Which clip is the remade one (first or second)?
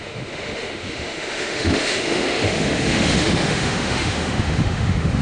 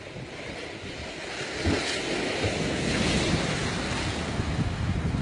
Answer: first